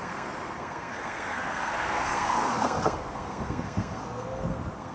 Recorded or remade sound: remade